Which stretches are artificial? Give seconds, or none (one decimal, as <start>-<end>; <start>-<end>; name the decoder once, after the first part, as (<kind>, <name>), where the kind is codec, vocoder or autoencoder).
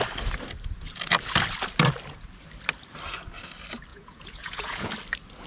3.9-4.9 (vocoder, Vocos)